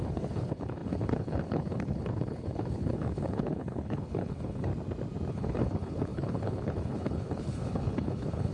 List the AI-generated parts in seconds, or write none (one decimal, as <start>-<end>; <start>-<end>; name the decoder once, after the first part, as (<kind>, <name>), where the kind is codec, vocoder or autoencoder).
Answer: 0.0-4.7 (codec, HILCodec); 5.3-8.5